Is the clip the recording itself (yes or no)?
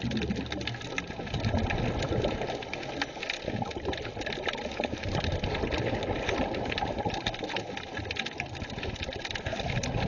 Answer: yes